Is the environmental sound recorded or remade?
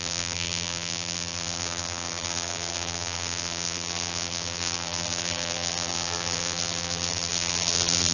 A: remade